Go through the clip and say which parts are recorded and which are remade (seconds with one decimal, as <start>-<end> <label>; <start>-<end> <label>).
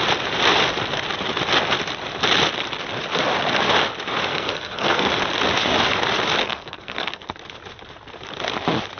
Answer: 0.0-4.3 recorded; 4.3-5.1 remade; 5.1-6.4 recorded; 6.4-7.3 remade; 7.3-9.0 recorded